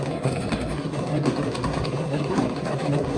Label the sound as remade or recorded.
remade